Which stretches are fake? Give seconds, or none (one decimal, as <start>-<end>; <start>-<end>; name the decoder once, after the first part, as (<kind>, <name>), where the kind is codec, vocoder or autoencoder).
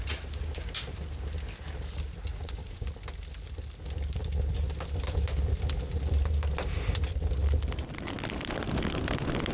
2.3-2.9 (vocoder, Vocos)